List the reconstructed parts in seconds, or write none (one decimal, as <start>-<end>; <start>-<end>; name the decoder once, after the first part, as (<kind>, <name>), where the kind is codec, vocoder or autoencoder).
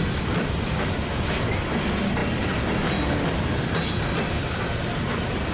none